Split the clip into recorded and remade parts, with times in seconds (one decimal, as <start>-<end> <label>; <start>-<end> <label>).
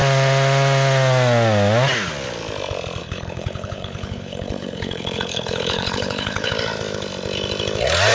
0.0-3.0 recorded; 3.0-6.5 remade; 6.5-8.1 recorded